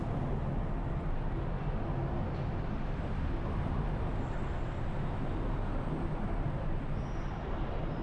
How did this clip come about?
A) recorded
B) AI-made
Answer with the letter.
A